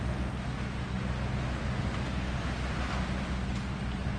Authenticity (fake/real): real